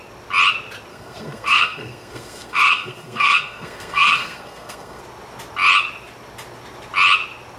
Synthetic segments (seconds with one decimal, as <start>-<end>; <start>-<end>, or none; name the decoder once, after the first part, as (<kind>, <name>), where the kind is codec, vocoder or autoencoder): 0.9-5.0 (codec, SNAC)